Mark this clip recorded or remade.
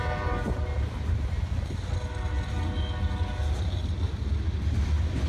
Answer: recorded